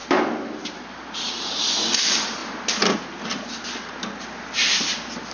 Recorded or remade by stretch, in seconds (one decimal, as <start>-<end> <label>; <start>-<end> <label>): 0.0-5.3 recorded

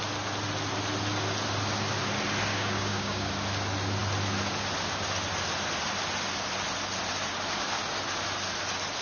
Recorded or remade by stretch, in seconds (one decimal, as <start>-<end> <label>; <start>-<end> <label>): 0.0-2.5 recorded; 2.5-3.3 remade; 3.3-9.0 recorded

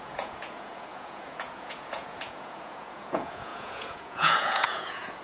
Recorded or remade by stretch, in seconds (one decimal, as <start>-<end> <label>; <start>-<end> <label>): 0.0-5.2 remade

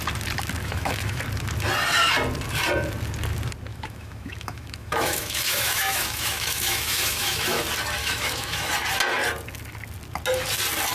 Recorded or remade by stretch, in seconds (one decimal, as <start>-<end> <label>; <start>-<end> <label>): 0.0-0.6 recorded; 0.6-1.2 remade; 1.2-3.7 recorded; 3.7-7.6 remade; 7.6-8.0 recorded; 8.0-8.7 remade; 8.7-10.9 recorded

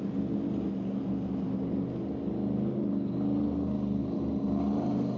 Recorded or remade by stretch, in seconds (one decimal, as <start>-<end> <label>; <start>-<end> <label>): 0.0-5.2 recorded